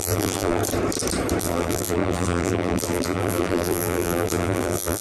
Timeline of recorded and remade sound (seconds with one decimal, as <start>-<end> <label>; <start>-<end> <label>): 0.0-0.6 remade; 0.6-1.4 recorded; 1.4-5.0 remade